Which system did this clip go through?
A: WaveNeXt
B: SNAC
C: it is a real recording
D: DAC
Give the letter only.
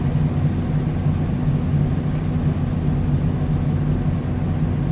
C